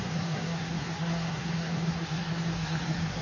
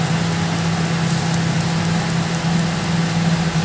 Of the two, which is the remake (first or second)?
first